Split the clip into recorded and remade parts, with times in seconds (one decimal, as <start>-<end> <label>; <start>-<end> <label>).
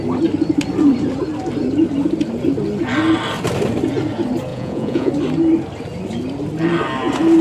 0.0-4.5 recorded; 4.5-5.1 remade; 5.1-7.4 recorded